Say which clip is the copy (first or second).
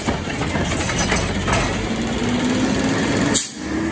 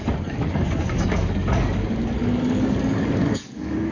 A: second